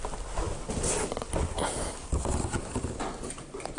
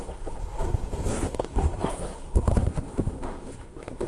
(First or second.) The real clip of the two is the first